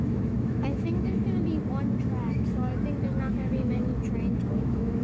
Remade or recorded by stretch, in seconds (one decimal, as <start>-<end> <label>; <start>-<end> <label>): 0.0-1.2 remade; 1.2-2.2 recorded; 2.2-2.7 remade; 2.7-3.3 recorded; 3.3-3.9 remade; 3.9-4.5 recorded; 4.5-5.0 remade